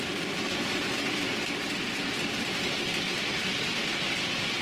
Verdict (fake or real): real